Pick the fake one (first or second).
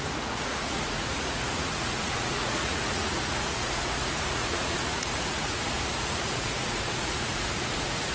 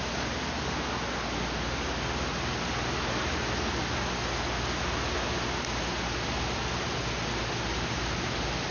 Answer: first